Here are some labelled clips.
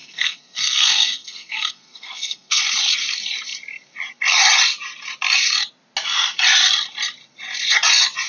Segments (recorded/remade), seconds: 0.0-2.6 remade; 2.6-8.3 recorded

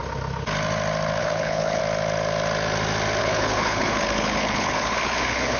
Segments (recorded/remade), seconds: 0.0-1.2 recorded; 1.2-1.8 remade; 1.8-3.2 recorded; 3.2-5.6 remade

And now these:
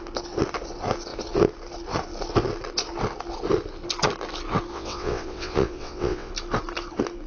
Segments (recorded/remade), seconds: 0.0-4.7 recorded; 4.7-6.3 remade; 6.3-7.3 recorded

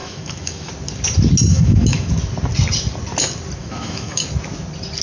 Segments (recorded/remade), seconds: 0.0-0.7 remade; 0.7-1.5 recorded; 1.5-2.1 remade; 2.1-3.6 recorded; 3.6-4.2 remade; 4.2-5.0 recorded

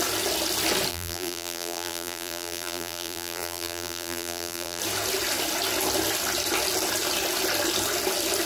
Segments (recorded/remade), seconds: 0.0-0.9 recorded; 0.9-4.8 remade; 4.8-8.5 recorded

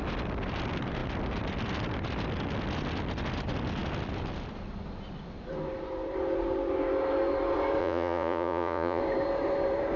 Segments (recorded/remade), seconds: 0.0-7.8 recorded; 7.8-9.0 remade; 9.0-10.0 recorded

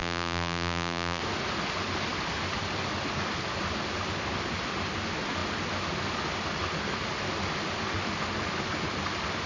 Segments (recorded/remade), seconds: 0.0-1.2 remade; 1.2-9.5 recorded